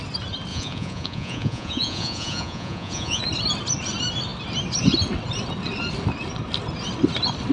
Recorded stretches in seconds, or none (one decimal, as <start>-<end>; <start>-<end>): 0.0-0.5; 3.2-7.5